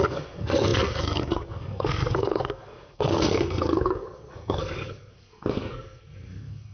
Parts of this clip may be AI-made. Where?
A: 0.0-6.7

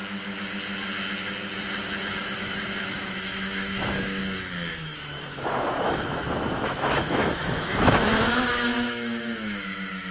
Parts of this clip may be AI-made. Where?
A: 2.2-4.2; 4.7-10.1

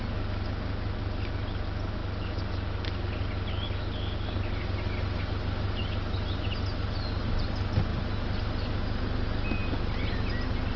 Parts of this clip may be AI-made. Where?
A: none